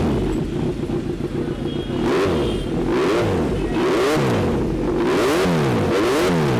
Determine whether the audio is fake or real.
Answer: real